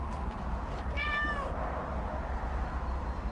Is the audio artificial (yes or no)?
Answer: no